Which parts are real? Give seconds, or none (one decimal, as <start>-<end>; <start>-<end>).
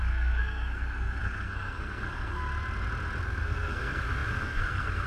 2.5-3.2